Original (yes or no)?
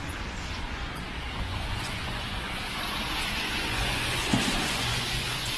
no